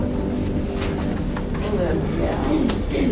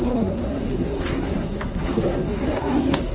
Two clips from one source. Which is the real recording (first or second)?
first